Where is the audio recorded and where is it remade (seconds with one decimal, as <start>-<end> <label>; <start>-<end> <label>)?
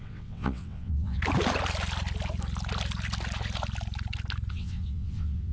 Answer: 0.0-1.2 remade; 1.2-4.5 recorded; 4.5-5.5 remade